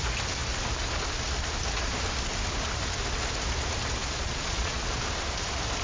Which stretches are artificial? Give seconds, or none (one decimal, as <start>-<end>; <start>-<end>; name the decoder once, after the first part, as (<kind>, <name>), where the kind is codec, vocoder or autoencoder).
4.0-4.8 (vocoder, Vocos)